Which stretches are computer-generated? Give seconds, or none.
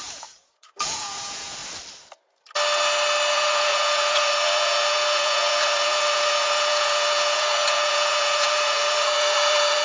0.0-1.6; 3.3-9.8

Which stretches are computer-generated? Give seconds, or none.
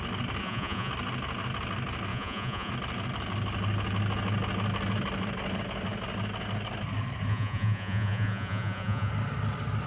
0.4-0.9; 2.1-2.7; 7.3-9.1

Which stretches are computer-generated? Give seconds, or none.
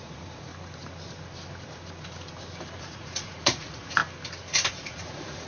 0.0-0.5; 2.8-4.0; 4.7-5.5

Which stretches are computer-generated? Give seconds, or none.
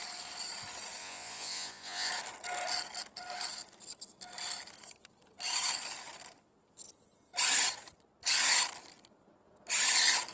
1.0-2.1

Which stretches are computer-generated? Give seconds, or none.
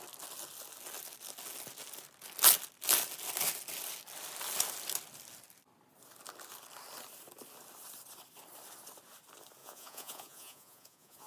9.6-11.3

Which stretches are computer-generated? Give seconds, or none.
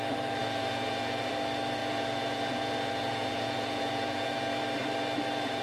0.4-1.3; 1.8-4.6